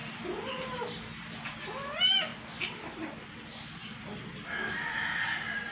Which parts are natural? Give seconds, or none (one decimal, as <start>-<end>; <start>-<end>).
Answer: 1.6-5.7